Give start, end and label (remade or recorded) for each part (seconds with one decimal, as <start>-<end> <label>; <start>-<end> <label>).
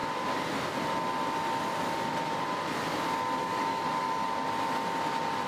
0.0-3.4 recorded; 3.4-4.1 remade; 4.1-5.5 recorded